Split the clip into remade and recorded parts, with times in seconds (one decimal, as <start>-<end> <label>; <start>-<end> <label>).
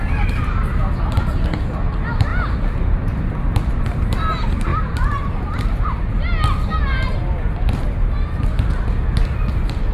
0.0-4.7 recorded; 4.7-6.0 remade; 6.0-9.9 recorded